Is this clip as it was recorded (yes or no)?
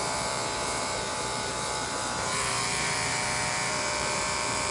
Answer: no